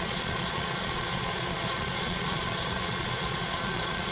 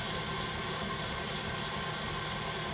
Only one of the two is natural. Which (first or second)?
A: second